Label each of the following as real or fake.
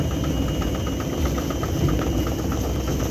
real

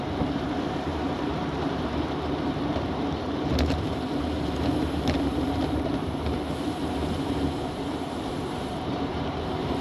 fake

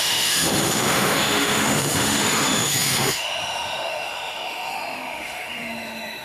fake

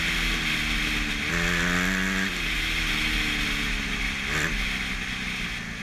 real